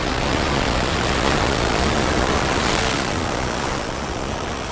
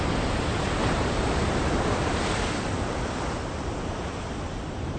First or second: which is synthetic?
first